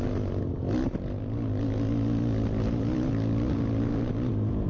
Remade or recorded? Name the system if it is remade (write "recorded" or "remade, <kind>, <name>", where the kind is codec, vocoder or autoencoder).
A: remade, vocoder, BigVGAN v2